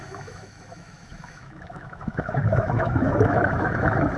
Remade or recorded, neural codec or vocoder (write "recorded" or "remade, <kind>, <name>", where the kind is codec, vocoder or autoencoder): remade, autoencoder, DAC-VAE